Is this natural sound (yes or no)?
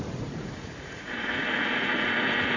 no